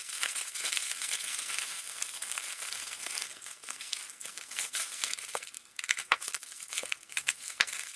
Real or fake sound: fake